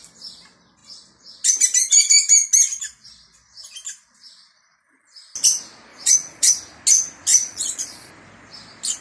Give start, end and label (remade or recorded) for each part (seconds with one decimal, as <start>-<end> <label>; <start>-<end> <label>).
0.0-5.9 recorded; 5.9-6.5 remade; 6.5-7.3 recorded; 7.3-8.1 remade; 8.1-9.0 recorded